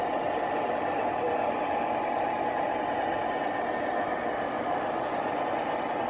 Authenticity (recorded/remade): remade